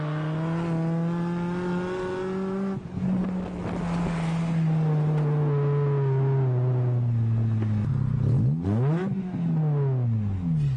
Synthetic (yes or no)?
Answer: no